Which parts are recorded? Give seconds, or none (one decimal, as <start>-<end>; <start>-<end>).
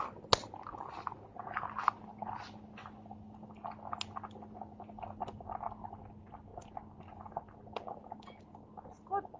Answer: 0.0-9.4